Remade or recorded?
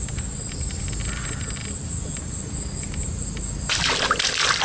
recorded